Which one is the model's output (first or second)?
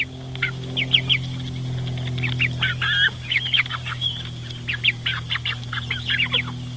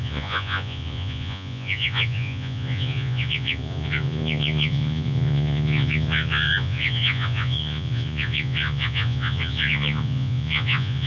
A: second